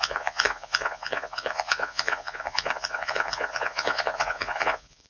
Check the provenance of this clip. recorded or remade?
remade